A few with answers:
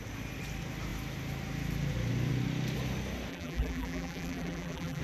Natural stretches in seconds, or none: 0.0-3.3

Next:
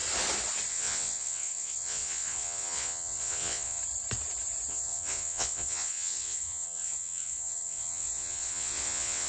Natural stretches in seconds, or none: 0.0-0.7; 3.8-4.7